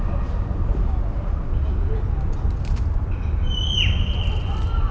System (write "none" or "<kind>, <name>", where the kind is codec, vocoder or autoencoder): none